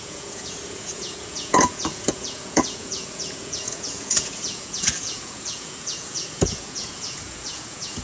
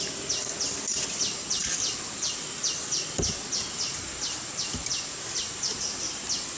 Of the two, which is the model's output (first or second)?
first